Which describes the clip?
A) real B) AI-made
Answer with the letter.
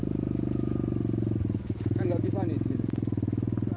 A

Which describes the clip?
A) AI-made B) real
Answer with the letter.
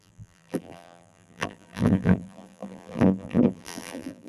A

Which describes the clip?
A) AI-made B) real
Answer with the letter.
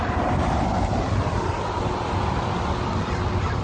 B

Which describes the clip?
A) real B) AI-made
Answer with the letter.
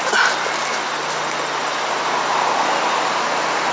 A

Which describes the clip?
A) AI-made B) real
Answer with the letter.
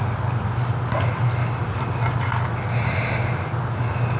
B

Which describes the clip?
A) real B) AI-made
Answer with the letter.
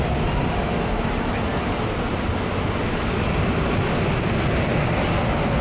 A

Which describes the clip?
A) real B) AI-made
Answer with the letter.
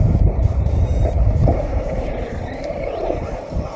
B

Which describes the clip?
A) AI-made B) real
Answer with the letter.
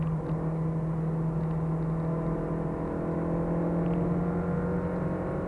B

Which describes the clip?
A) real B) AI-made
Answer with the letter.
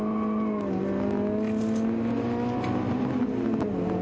A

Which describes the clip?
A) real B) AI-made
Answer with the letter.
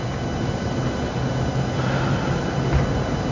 A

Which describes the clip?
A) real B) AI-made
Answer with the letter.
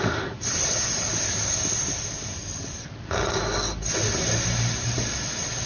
A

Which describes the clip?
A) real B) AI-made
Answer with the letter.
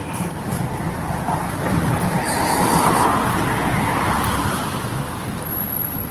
A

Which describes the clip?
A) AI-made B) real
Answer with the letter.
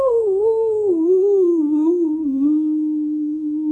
A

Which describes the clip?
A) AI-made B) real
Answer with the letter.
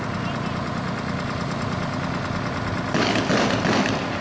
B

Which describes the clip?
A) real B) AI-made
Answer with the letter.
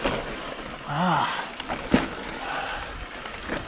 A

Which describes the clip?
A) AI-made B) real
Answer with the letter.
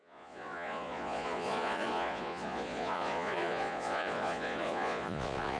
A